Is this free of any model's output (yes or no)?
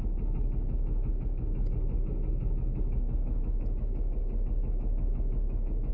no